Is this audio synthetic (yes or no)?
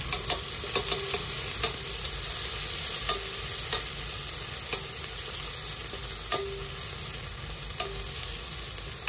no